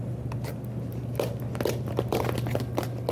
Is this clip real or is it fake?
real